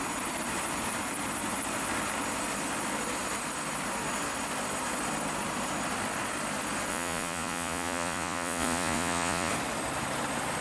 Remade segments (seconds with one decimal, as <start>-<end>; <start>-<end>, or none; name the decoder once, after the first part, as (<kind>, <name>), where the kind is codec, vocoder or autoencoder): 6.9-9.5 (vocoder, Vocos)